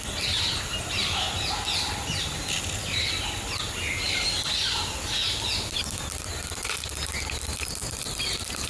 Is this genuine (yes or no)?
yes